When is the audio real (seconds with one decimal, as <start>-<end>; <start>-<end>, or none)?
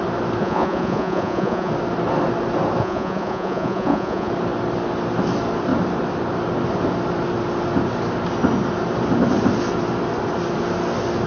0.0-0.4; 1.7-2.8; 4.3-11.3